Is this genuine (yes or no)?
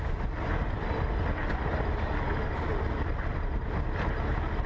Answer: yes